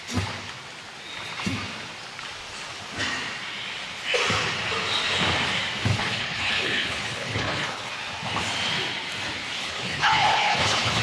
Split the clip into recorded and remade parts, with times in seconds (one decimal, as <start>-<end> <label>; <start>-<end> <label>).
0.0-5.9 recorded; 5.9-7.9 remade; 7.9-9.6 recorded; 9.6-11.0 remade